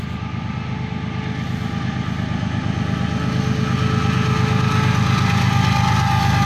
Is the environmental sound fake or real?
real